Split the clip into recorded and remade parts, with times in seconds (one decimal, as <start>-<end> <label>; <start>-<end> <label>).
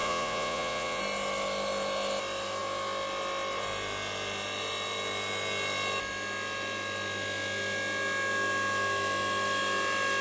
0.0-1.0 remade; 1.0-10.2 recorded